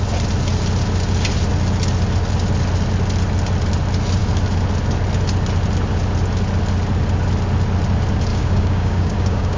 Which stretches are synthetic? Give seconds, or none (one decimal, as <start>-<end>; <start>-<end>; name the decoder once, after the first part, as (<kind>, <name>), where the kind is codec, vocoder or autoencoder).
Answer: 8.3-9.6 (codec, DAC)